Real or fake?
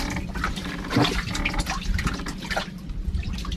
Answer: real